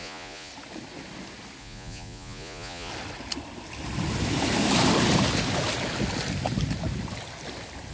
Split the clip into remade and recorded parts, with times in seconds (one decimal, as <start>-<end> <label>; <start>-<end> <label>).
0.0-0.5 remade; 0.5-1.6 recorded; 1.6-2.9 remade; 2.9-7.9 recorded